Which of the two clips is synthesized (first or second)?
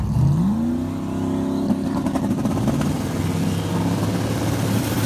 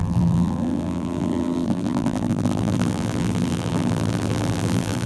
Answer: second